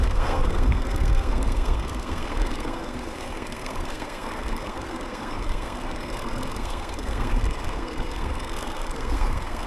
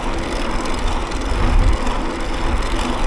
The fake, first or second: first